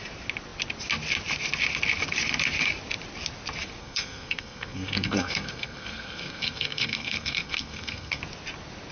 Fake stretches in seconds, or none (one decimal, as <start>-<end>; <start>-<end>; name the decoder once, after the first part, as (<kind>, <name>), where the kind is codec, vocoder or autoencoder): 3.8-8.2 (codec, SNAC)